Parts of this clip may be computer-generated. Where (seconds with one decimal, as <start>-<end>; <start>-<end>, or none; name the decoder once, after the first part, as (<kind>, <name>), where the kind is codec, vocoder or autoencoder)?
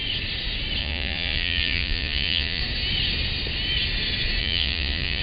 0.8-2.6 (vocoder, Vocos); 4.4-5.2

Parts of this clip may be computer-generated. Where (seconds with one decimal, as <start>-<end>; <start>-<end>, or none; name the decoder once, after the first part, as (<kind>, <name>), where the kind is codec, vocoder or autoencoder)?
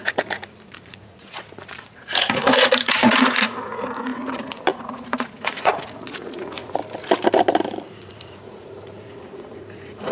0.0-6.8 (vocoder, Vocos); 7.9-10.1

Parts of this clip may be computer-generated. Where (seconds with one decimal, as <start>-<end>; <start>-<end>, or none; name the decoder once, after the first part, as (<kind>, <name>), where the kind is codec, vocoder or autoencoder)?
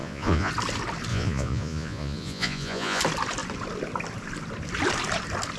0.0-0.5 (vocoder, Vocos); 1.1-3.0